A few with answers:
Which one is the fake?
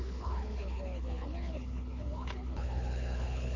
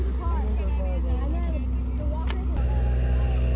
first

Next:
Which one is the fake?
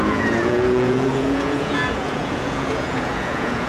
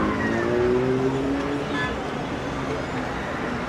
first